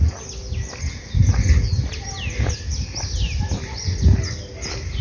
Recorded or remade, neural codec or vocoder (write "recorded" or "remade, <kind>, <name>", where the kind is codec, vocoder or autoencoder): recorded